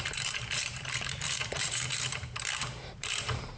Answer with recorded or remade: remade